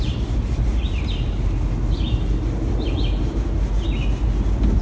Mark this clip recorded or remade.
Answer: recorded